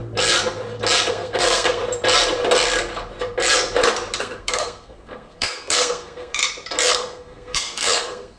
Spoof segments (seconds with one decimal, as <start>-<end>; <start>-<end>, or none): 1.1-1.8; 4.2-6.4; 6.9-8.4